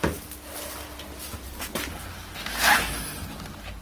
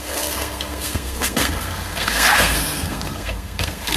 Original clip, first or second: first